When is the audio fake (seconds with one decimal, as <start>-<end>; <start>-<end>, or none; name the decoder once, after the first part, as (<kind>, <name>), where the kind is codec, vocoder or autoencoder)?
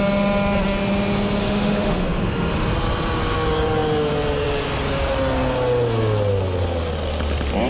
1.4-2.7 (autoencoder, DAC-VAE)